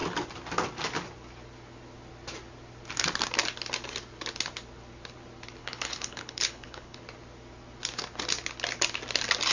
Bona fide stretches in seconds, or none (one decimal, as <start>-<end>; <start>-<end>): 0.0-5.6; 7.0-9.5